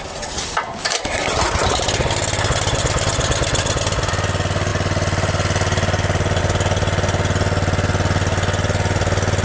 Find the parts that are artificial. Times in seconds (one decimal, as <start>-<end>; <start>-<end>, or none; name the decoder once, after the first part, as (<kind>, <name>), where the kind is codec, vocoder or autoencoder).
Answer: none